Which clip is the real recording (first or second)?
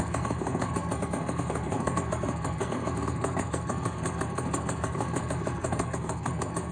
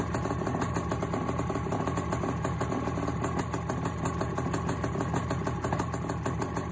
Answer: second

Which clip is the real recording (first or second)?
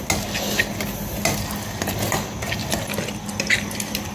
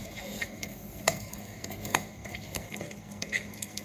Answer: first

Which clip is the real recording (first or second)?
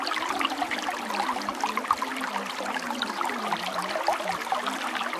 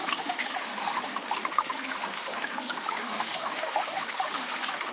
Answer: first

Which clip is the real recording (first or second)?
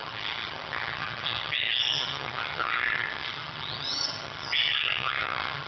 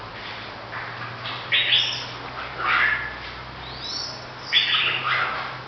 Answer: second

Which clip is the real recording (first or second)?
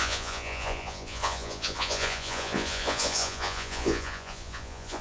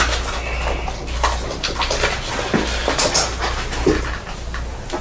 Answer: second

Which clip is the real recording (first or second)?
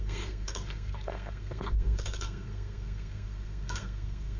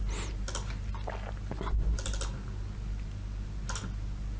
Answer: second